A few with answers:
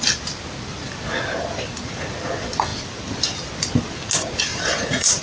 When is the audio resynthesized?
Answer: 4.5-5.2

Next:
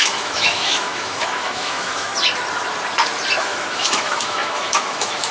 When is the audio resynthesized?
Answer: 0.0-2.1; 3.4-5.3

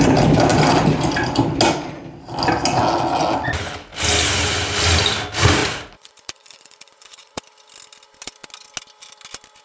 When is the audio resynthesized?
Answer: 5.6-7.4

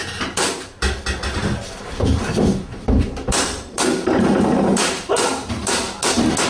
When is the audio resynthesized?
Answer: 0.0-3.9; 4.7-5.7

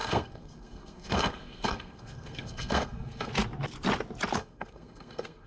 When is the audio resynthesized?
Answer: 0.0-3.3; 4.4-5.5

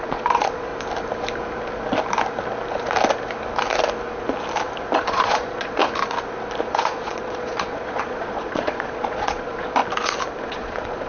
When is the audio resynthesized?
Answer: 0.0-0.7; 5.0-5.8; 6.6-9.8; 10.4-11.1

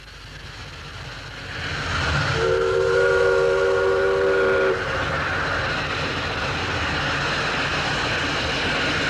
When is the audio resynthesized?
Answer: none

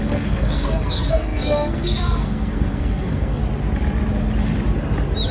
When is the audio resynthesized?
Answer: 0.0-3.4